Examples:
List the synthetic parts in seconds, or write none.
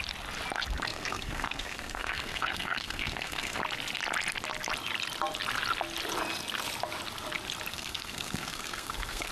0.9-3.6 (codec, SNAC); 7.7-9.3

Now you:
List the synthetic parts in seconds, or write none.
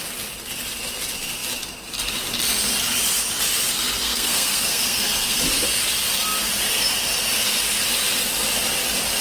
4.0-5.4 (codec, SNAC)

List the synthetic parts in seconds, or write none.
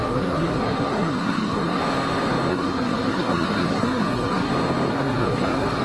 0.0-1.8 (codec, SNAC); 2.5-4.5; 4.9-5.8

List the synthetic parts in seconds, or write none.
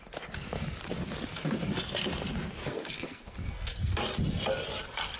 2.6-3.9 (codec, SNAC)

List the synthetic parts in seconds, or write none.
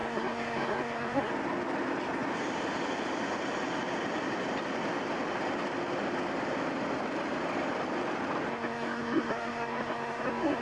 0.0-1.3 (codec, SNAC); 8.5-10.6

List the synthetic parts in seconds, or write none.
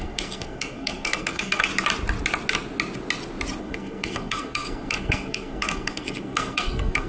0.0-1.7 (codec, SNAC); 3.6-7.1